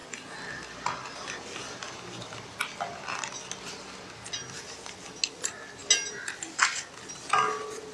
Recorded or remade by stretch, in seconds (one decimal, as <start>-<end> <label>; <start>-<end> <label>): 0.0-7.9 recorded